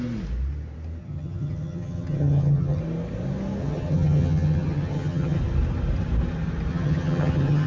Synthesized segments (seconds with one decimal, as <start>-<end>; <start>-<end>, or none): 1.0-2.8; 3.6-5.4; 6.7-7.7

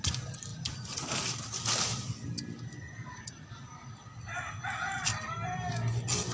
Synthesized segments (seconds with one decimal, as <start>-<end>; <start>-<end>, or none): none

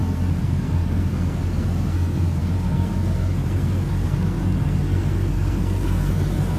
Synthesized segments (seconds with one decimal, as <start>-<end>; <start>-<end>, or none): 0.0-6.6

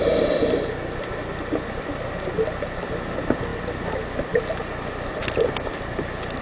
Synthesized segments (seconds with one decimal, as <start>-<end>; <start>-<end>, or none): none